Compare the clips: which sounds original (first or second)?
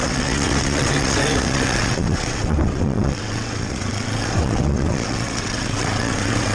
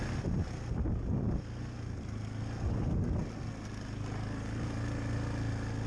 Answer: second